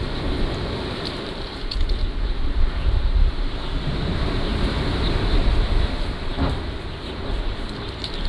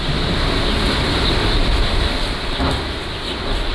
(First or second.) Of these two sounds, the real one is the second